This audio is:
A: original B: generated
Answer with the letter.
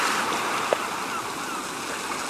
A